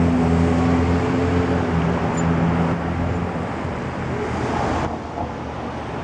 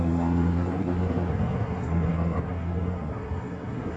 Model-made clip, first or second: second